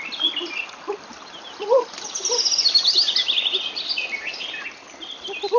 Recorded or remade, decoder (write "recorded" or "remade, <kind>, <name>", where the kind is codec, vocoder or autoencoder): recorded